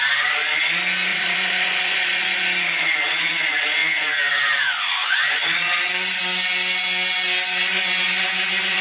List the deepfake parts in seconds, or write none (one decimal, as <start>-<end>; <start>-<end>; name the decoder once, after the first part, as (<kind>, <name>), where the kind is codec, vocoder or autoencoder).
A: 1.1-2.4 (vocoder, Vocos); 5.0-6.2